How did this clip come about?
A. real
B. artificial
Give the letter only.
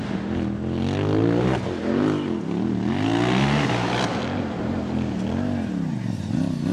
A